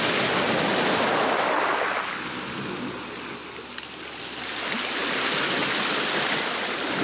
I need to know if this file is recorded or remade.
recorded